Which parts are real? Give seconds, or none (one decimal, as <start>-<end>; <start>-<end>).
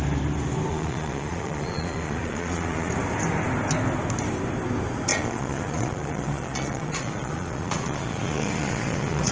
0.0-0.7; 2.9-5.1